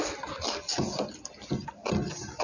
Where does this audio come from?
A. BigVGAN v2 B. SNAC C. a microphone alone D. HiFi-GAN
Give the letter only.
C